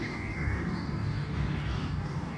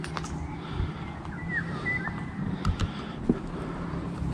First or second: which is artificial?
first